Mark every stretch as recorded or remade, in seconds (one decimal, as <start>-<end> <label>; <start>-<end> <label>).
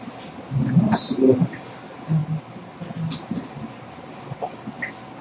0.0-5.2 recorded